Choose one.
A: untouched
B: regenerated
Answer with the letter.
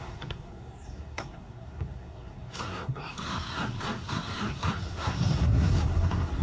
B